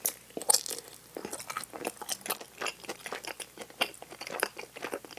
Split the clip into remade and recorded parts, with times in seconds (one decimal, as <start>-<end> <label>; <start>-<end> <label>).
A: 0.0-5.2 recorded

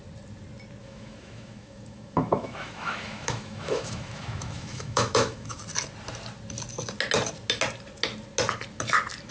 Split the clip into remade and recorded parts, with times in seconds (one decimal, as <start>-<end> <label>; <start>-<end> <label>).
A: 0.0-0.8 recorded; 0.8-5.6 remade; 5.6-9.3 recorded